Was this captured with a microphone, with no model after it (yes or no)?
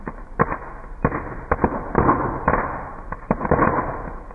yes